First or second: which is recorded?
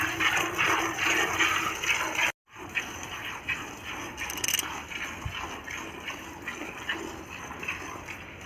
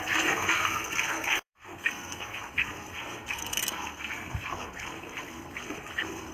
first